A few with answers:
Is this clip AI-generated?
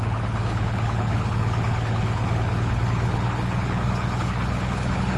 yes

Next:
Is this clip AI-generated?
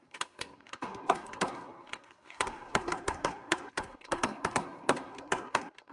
yes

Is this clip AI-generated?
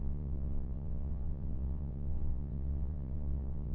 yes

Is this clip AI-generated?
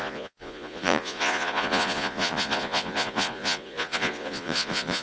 yes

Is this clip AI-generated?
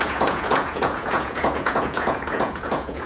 yes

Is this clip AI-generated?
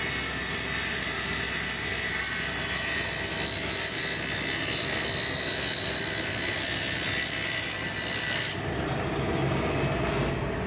no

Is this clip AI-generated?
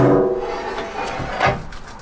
no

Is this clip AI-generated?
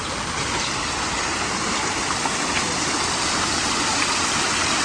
no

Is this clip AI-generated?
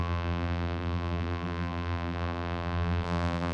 yes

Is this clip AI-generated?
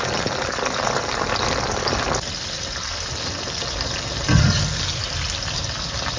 no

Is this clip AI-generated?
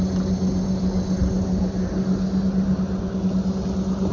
no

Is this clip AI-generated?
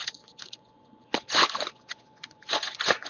yes